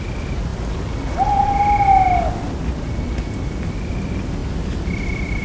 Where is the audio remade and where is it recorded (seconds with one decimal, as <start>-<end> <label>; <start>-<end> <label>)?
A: 0.0-5.4 recorded

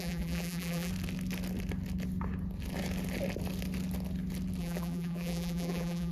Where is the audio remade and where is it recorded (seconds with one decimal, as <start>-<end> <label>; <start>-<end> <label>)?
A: 0.0-0.9 remade; 0.9-4.6 recorded; 4.6-6.1 remade

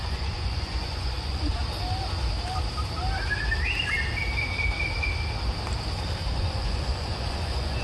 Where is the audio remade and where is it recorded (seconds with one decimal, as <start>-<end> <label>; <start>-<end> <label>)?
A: 0.0-1.6 remade; 1.6-6.3 recorded; 6.3-7.8 remade

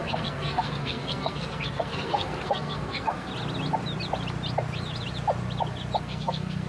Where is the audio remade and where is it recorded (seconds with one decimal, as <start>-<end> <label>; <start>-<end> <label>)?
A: 0.0-3.3 remade; 3.3-6.0 recorded; 6.0-6.7 remade